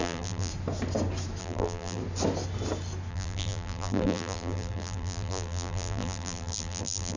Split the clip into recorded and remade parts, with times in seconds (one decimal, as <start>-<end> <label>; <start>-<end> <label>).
0.0-0.5 remade; 0.5-1.4 recorded; 1.4-2.0 remade; 2.0-3.1 recorded; 3.1-7.2 remade